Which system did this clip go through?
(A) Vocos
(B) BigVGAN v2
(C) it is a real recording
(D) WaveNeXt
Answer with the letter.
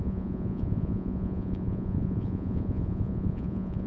A